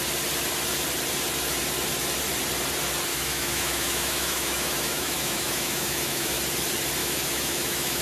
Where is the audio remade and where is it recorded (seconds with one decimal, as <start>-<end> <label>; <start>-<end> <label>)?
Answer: 0.0-3.1 recorded; 3.1-6.4 remade; 6.4-7.0 recorded; 7.0-8.0 remade